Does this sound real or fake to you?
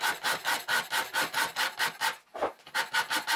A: real